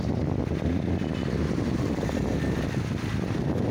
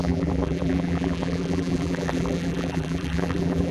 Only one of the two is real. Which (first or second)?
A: first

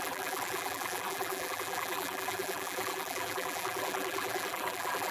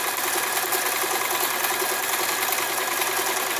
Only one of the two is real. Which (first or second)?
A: second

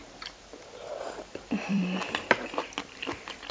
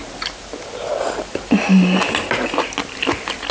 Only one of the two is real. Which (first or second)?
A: second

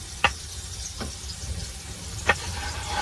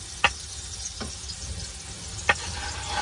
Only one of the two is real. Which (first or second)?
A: second